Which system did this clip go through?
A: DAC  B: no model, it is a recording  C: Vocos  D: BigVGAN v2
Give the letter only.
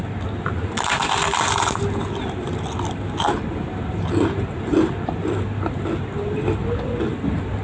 B